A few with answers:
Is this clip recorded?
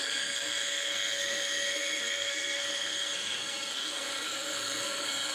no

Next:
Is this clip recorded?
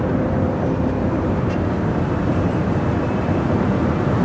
no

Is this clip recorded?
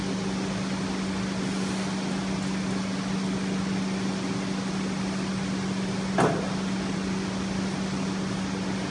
yes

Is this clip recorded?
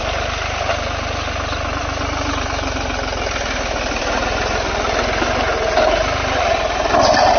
no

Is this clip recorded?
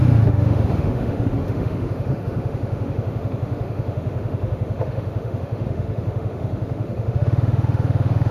no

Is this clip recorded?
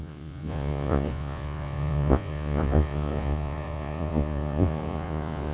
no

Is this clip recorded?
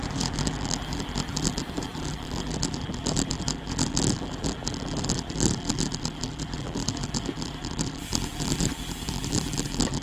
no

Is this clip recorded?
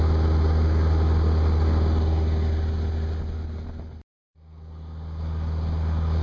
yes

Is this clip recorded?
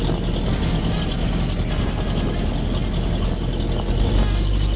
yes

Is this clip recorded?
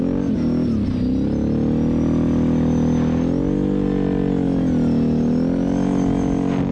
yes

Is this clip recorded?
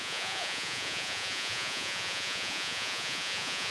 no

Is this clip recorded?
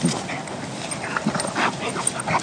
yes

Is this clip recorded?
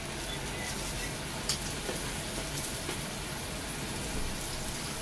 yes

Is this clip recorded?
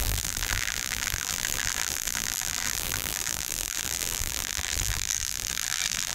no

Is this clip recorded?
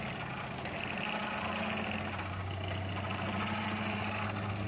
yes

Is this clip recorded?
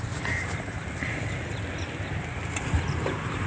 yes